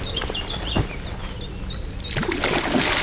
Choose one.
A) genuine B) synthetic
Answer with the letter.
A